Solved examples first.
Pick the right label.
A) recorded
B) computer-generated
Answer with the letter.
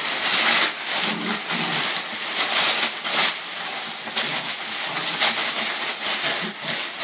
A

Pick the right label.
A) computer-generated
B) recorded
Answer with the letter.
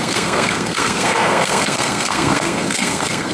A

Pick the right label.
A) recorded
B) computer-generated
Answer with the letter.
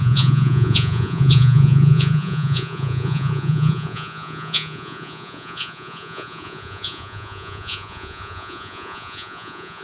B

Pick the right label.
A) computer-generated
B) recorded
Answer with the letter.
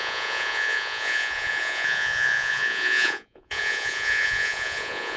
A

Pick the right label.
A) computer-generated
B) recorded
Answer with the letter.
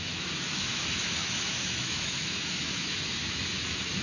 A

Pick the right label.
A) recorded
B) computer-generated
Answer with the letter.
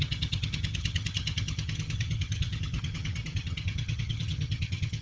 B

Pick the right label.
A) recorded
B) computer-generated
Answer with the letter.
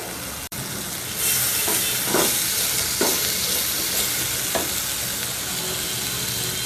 A